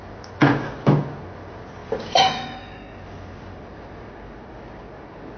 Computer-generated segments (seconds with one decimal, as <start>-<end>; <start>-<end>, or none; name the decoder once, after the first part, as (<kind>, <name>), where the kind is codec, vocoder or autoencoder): none